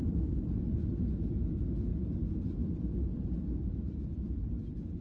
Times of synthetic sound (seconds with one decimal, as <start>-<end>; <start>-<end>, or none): 1.9-5.0

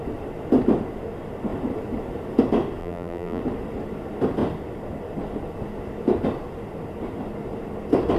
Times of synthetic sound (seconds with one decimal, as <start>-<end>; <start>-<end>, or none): 2.8-3.4

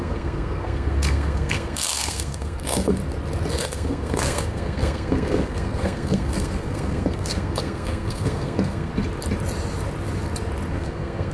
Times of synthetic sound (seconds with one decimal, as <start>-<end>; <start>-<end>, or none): 0.0-3.0; 3.5-8.9; 10.7-11.3

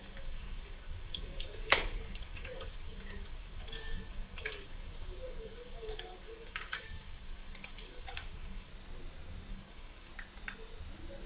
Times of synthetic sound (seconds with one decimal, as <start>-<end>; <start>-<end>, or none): 0.0-8.7; 9.5-10.1

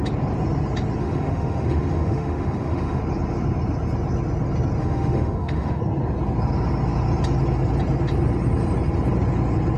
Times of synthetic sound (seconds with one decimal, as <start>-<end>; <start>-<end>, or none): 1.0-3.0; 4.8-5.8

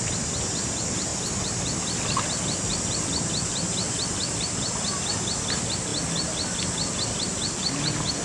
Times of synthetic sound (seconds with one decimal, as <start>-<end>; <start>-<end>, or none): none

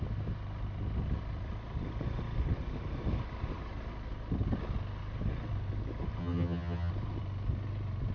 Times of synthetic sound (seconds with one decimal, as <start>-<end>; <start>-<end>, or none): 6.2-6.9